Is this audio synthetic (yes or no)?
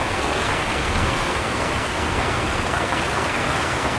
yes